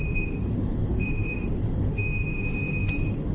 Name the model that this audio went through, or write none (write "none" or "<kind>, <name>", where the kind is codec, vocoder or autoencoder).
autoencoder, DAC-VAE